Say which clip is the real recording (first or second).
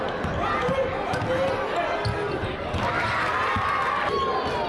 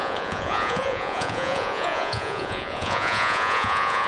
first